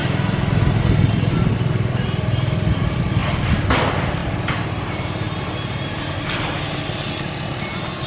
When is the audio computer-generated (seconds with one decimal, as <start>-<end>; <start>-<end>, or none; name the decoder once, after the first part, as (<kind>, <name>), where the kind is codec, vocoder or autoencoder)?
none